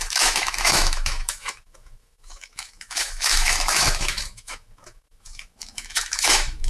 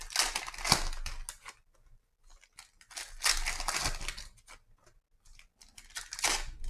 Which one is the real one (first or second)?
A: second